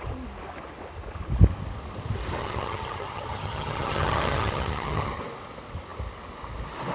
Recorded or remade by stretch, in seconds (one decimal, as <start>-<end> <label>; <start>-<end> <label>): 0.0-2.4 recorded; 2.4-5.2 remade; 5.2-6.9 recorded